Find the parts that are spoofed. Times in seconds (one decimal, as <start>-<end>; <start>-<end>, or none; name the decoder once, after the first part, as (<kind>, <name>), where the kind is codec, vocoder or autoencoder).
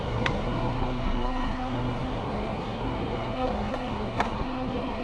0.0-5.0 (codec, SNAC)